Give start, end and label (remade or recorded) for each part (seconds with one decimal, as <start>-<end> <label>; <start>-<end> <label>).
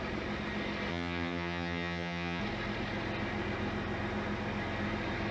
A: 0.0-0.9 recorded; 0.9-2.4 remade; 2.4-5.3 recorded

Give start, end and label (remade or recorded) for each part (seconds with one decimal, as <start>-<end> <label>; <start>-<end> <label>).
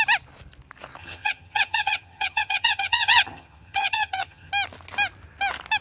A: 0.0-1.0 recorded; 1.0-4.5 remade; 4.5-5.8 recorded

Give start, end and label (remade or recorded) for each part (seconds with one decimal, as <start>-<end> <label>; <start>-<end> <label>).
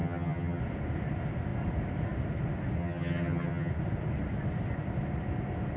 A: 0.0-0.6 remade; 0.6-2.8 recorded; 2.8-3.7 remade; 3.7-5.8 recorded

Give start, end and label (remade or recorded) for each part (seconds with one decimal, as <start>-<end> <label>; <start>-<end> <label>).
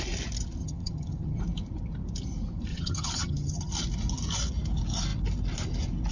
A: 0.0-0.6 recorded; 0.6-1.4 remade; 1.4-2.7 recorded; 2.7-3.7 remade; 3.7-6.1 recorded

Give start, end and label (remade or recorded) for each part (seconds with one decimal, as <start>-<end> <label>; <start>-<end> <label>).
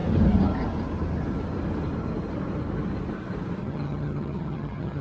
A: 0.0-3.6 recorded; 3.6-5.0 remade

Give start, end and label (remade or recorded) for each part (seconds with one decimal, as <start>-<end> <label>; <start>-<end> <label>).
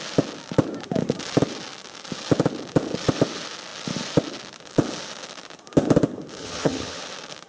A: 0.0-6.4 recorded; 6.4-7.0 remade; 7.0-7.5 recorded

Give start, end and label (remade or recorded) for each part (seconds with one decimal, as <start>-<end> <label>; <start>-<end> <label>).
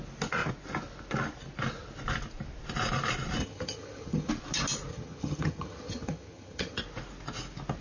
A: 0.0-3.4 recorded; 3.4-4.3 remade; 4.3-4.9 recorded; 4.9-6.8 remade; 6.8-7.8 recorded